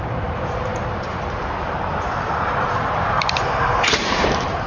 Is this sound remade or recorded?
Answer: remade